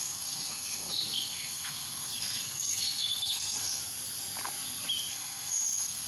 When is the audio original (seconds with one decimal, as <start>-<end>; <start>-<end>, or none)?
3.8-5.1